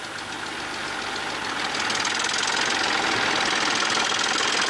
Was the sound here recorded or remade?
recorded